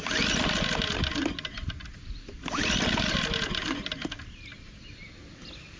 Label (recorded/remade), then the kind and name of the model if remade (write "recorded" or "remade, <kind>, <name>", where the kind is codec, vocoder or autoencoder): recorded